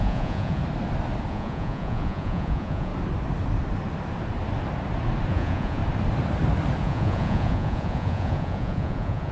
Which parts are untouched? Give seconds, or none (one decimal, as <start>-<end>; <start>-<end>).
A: 0.6-1.3; 2.9-5.3; 5.8-6.8